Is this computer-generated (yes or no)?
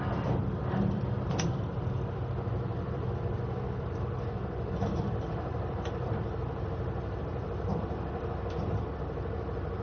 yes